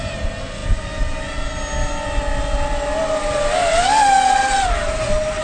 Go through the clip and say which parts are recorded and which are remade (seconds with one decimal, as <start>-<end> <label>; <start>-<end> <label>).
0.0-5.4 recorded